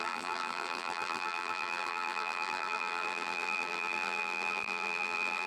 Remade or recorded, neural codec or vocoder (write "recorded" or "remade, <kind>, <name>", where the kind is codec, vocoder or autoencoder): remade, vocoder, BigVGAN v2